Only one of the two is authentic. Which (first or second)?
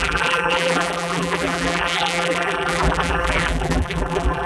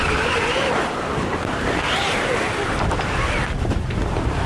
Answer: second